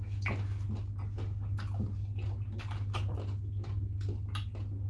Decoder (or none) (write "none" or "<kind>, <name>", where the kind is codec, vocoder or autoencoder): none